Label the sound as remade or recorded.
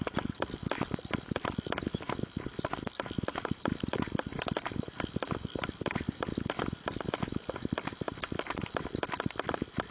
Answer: recorded